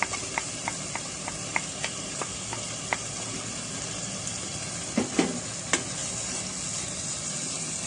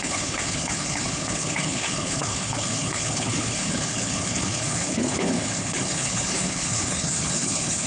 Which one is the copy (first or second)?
second